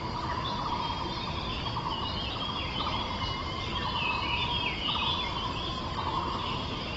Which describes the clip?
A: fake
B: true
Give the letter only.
B